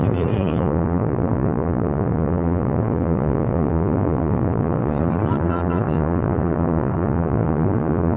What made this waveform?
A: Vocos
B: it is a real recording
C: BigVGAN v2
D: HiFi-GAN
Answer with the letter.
A